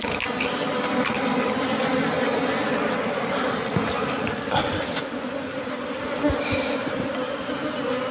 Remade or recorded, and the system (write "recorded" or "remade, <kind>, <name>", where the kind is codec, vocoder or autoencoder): recorded